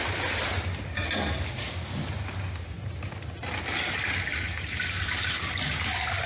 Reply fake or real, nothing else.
real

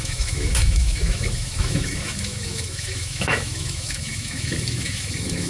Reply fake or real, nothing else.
fake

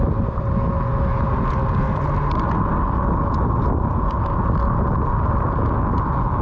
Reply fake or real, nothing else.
real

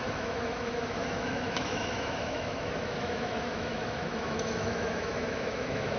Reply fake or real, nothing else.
fake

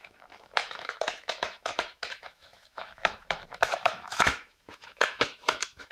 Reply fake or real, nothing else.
fake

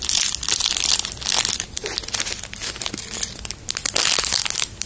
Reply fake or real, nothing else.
real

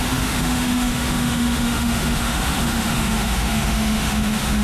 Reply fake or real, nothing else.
fake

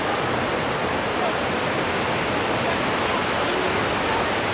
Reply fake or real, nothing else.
real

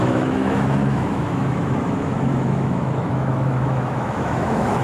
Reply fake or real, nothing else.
fake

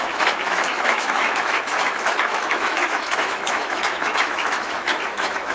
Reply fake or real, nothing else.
fake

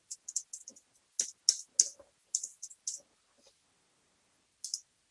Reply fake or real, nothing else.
real